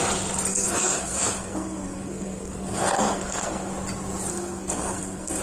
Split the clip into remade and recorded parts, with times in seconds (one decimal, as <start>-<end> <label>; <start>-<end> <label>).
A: 0.0-0.5 recorded; 0.5-3.7 remade; 3.7-4.3 recorded; 4.3-5.4 remade